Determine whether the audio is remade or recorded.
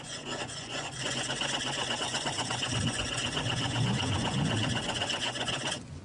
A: remade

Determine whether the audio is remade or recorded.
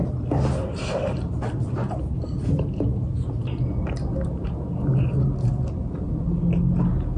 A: recorded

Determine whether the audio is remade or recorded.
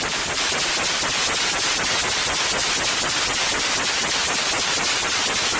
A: recorded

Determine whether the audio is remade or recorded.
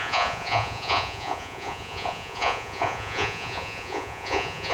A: remade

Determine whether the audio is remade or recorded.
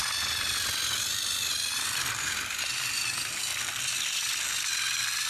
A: recorded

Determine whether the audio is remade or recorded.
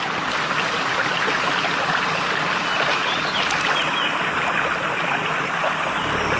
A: recorded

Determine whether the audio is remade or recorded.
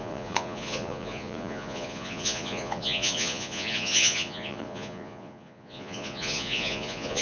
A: remade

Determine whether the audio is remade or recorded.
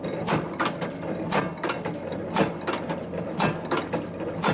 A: recorded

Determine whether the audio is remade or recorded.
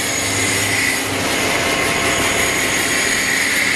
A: recorded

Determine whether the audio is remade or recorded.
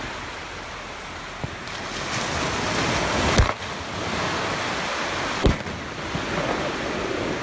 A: recorded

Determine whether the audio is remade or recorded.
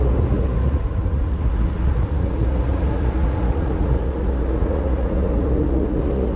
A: remade